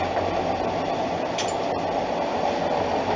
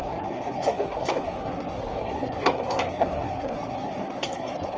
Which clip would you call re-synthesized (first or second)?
second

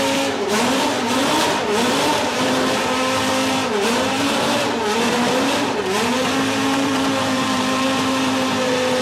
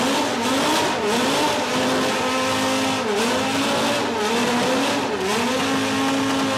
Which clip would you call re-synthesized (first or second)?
first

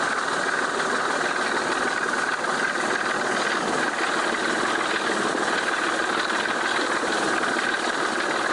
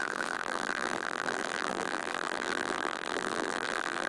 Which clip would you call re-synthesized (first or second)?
second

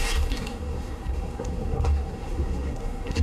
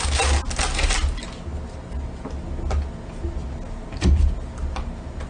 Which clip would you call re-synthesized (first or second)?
first